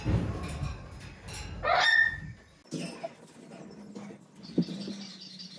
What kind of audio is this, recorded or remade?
recorded